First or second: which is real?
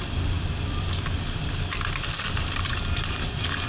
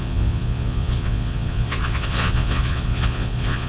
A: first